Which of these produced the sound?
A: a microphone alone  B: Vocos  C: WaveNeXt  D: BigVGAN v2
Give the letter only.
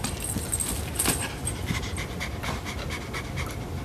A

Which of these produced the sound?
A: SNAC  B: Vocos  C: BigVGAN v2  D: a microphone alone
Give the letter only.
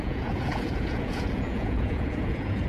B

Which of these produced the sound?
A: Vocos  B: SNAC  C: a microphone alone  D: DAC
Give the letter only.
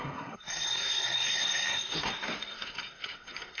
B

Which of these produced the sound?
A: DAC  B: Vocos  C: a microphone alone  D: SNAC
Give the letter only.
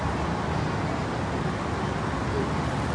C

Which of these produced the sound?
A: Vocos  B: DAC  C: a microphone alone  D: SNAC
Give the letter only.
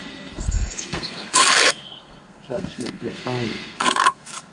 D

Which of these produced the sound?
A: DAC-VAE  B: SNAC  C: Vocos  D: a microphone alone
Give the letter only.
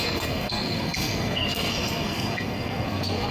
B